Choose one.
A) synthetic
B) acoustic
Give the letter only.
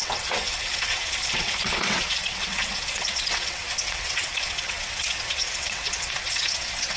A